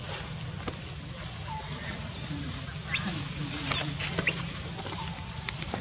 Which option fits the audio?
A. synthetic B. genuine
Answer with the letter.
B